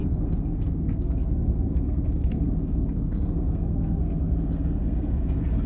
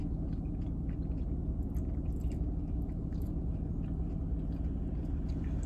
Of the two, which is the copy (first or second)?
first